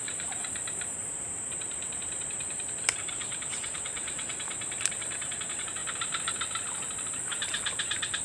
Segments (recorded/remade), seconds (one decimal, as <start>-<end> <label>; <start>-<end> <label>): 0.0-5.8 remade; 5.8-7.1 recorded; 7.1-8.2 remade